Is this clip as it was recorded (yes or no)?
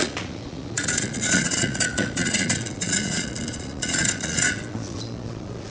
no